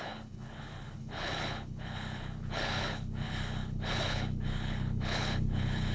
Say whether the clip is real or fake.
fake